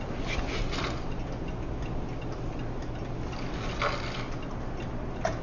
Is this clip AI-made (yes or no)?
no